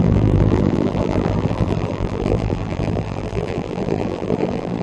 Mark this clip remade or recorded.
remade